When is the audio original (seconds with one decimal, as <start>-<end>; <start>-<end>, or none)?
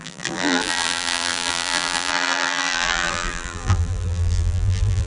none